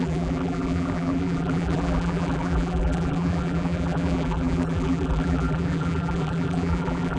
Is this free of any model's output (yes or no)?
no